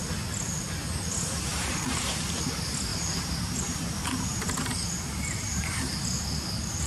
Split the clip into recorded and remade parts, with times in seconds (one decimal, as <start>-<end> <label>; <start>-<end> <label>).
0.0-1.5 recorded; 1.5-2.4 remade; 2.4-2.9 recorded; 2.9-3.6 remade; 3.6-4.3 recorded; 4.3-6.0 remade; 6.0-6.9 recorded